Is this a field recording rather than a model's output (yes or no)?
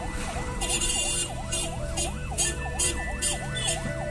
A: no